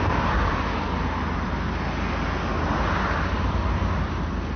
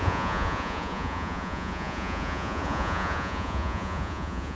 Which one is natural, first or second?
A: first